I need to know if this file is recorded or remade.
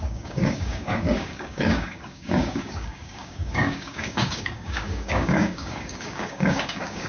remade